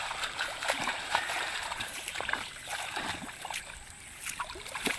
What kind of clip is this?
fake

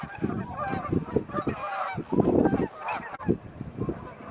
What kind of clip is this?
real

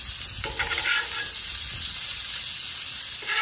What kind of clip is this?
real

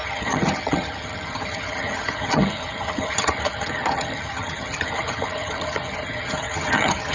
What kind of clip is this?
fake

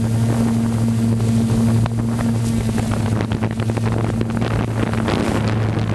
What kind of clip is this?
real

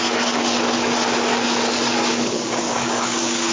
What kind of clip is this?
fake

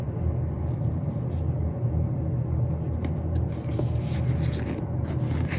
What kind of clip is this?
real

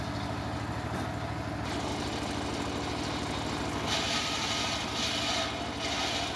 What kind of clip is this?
real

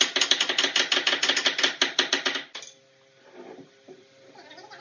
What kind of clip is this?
real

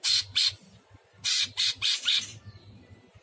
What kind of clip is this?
fake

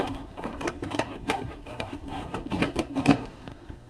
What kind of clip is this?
fake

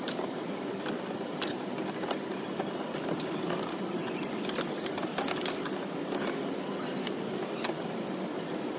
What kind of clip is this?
real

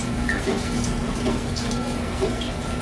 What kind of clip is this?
fake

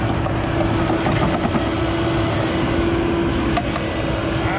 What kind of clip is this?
real